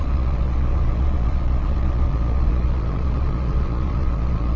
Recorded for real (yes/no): no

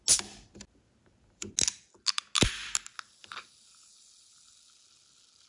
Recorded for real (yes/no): yes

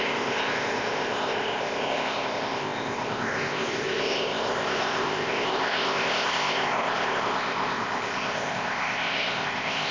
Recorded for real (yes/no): no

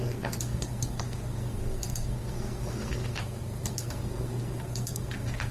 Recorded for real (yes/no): no